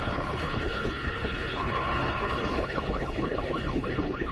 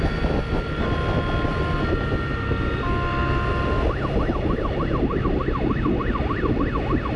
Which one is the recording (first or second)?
second